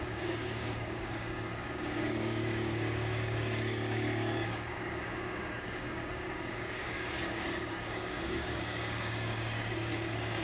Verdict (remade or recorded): remade